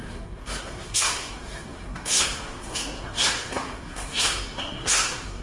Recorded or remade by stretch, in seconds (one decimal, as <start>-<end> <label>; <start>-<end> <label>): 0.0-5.4 remade